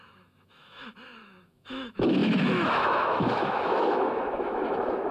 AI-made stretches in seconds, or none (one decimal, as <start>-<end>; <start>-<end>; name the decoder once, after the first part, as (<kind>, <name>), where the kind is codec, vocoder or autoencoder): 0.0-5.1 (autoencoder, DAC-VAE)